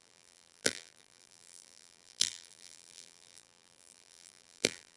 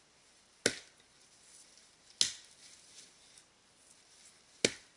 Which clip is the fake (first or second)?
first